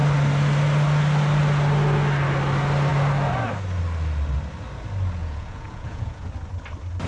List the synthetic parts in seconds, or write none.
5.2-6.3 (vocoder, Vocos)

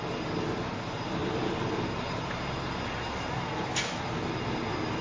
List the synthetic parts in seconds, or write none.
none

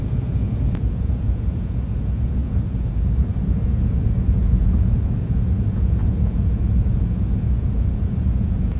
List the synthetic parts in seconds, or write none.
0.0-8.8 (vocoder, Vocos)